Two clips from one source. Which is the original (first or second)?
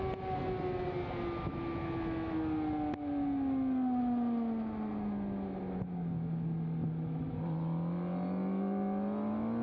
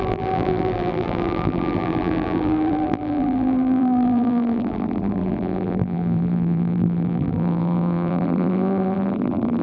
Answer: first